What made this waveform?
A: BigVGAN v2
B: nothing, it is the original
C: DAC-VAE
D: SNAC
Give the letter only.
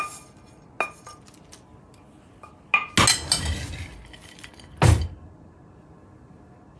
B